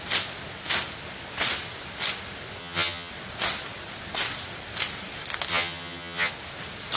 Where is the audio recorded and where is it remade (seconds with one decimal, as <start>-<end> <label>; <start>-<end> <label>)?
0.0-2.6 recorded; 2.6-3.1 remade; 3.1-5.5 recorded; 5.5-6.3 remade; 6.3-7.0 recorded

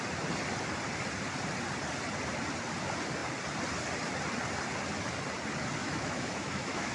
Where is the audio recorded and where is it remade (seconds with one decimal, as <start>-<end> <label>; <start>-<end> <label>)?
0.0-5.8 recorded; 5.8-6.9 remade

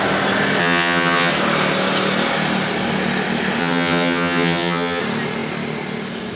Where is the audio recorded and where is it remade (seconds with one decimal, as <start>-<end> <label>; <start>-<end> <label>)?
0.0-0.6 recorded; 0.6-1.3 remade; 1.3-3.6 recorded; 3.6-5.0 remade; 5.0-6.4 recorded

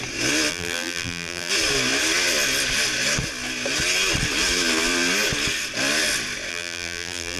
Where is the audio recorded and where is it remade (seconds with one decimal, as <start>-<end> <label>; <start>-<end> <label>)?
0.0-0.5 recorded; 0.5-1.5 remade; 1.5-6.5 recorded; 6.5-7.4 remade

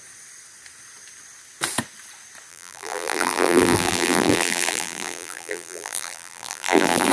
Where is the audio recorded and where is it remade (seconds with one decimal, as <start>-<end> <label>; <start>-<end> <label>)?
0.0-2.5 recorded; 2.5-7.1 remade

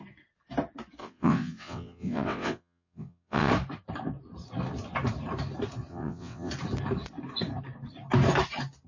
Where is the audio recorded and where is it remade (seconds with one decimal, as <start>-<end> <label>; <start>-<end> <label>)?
0.0-1.0 recorded; 1.0-3.5 remade; 3.5-5.9 recorded; 5.9-6.5 remade; 6.5-8.9 recorded

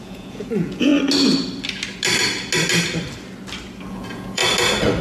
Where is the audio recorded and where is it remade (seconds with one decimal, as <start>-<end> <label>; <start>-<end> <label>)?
0.0-0.9 remade; 0.9-3.9 recorded; 3.9-4.4 remade; 4.4-5.0 recorded

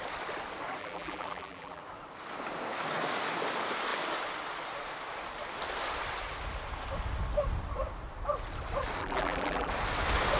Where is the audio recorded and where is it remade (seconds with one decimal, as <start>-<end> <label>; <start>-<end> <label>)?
0.0-0.8 recorded; 0.8-1.8 remade; 1.8-9.0 recorded; 9.0-9.7 remade; 9.7-10.4 recorded